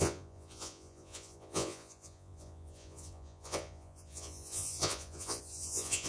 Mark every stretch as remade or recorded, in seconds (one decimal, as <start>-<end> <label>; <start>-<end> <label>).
0.0-6.1 remade